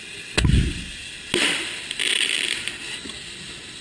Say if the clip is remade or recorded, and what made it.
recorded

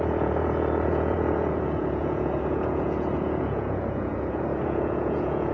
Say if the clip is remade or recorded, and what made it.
remade, vocoder, Vocos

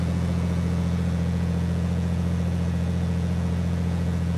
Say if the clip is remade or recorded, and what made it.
remade, vocoder, Vocos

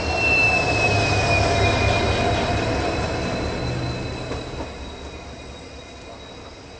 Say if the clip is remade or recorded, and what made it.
recorded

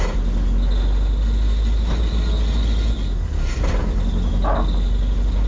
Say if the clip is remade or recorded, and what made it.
recorded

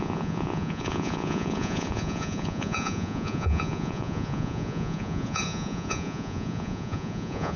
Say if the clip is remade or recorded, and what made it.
remade, vocoder, Vocos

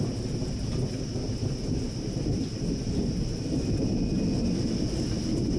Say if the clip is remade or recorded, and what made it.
recorded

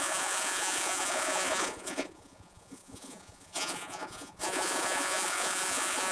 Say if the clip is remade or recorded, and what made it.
remade, vocoder, Vocos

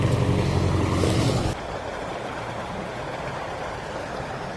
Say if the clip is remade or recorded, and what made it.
recorded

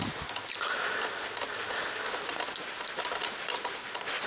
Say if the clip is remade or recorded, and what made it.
recorded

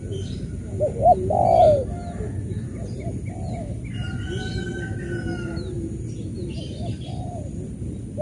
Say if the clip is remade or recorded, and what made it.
recorded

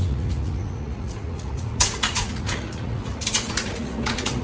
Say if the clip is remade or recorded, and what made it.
remade, vocoder, Vocos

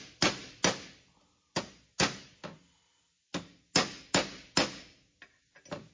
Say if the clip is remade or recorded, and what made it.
recorded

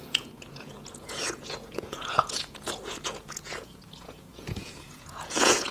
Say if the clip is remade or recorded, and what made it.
remade, vocoder, Vocos